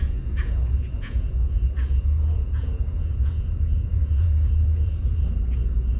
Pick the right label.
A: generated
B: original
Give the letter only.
A